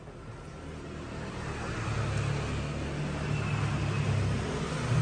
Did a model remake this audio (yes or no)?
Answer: no